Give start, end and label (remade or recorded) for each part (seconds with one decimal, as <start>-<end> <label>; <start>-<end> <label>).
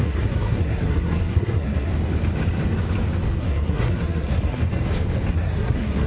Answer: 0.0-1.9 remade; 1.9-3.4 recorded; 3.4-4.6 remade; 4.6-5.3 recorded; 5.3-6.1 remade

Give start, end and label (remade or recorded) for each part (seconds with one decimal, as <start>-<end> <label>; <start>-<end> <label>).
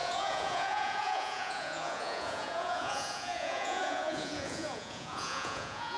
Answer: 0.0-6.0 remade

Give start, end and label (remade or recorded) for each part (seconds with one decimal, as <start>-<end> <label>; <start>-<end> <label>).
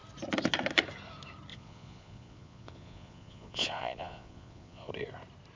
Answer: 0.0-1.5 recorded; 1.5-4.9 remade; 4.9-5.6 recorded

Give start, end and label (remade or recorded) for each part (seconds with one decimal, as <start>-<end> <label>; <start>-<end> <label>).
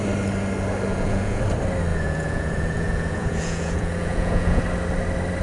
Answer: 0.0-0.9 recorded; 0.9-1.4 remade; 1.4-1.9 recorded; 1.9-4.6 remade; 4.6-5.4 recorded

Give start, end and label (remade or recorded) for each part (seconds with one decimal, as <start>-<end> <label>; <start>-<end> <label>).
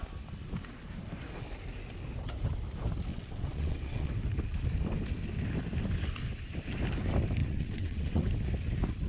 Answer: 0.0-3.1 recorded; 3.1-4.1 remade; 4.1-7.4 recorded; 7.4-8.2 remade; 8.2-9.1 recorded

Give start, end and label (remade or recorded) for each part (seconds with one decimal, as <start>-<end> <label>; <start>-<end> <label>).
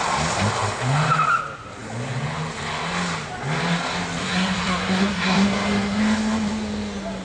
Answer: 0.0-4.2 recorded; 4.2-6.0 remade; 6.0-7.2 recorded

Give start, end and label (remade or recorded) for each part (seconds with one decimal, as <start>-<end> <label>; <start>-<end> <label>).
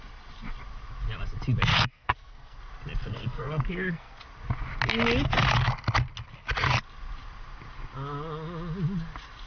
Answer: 0.0-1.7 recorded; 1.7-2.6 remade; 2.6-3.1 recorded; 3.1-4.2 remade; 4.2-9.5 recorded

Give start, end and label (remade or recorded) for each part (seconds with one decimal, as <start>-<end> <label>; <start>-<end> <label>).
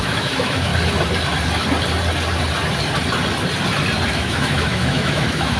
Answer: 0.0-0.7 remade; 0.7-4.1 recorded; 4.1-5.6 remade